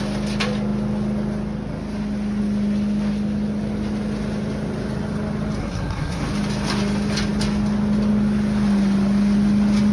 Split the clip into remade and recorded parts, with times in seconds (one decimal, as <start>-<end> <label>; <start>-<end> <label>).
0.0-5.6 recorded; 5.6-6.2 remade; 6.2-9.9 recorded